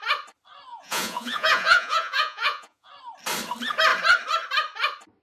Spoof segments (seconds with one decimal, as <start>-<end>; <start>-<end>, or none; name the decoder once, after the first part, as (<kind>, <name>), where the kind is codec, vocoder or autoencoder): 0.7-2.9 (vocoder, Vocos)